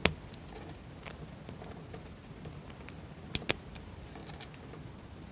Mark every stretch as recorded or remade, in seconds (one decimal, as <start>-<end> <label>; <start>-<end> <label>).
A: 0.0-5.3 recorded